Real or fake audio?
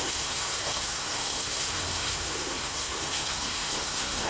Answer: fake